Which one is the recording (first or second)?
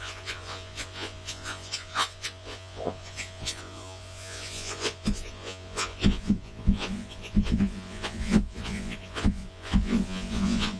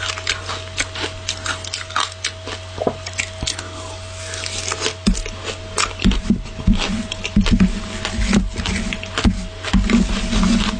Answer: second